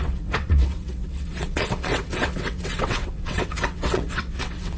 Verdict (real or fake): fake